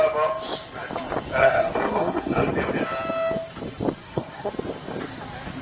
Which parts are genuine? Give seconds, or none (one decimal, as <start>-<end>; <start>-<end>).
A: 0.0-1.4; 2.5-4.0; 4.5-5.6